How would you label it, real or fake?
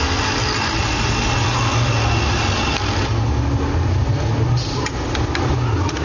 real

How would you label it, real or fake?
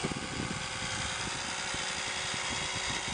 real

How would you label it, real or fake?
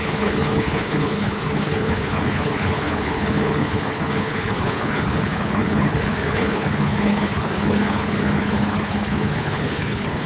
fake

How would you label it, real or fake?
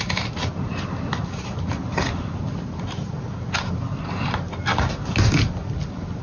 real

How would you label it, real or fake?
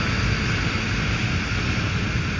real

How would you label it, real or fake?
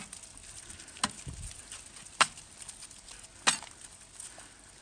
real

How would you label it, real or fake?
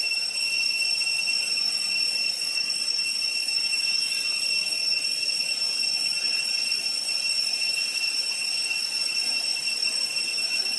real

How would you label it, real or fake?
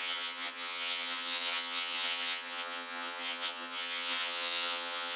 fake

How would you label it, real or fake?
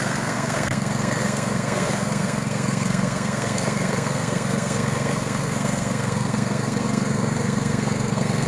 fake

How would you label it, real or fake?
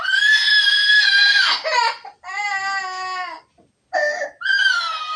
real